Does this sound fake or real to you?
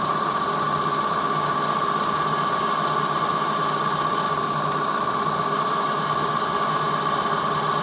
real